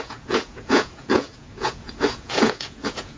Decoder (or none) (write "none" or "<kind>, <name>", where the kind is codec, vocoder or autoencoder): vocoder, Vocos